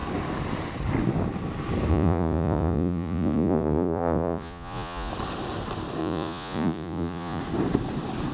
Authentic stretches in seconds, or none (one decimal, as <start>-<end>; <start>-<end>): 0.0-1.9; 5.1-6.0; 7.4-8.3